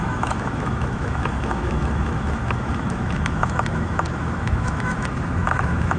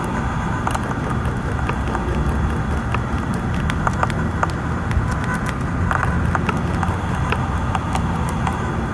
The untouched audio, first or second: second